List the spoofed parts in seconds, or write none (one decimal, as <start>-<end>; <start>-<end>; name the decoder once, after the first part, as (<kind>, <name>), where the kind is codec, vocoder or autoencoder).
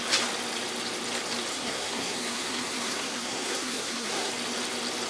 1.5-4.3 (codec, SNAC)